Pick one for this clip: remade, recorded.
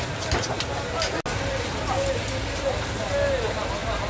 recorded